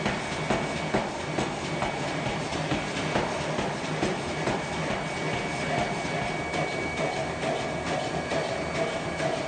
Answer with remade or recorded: recorded